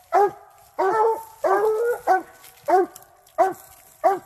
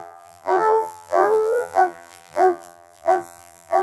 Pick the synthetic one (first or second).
second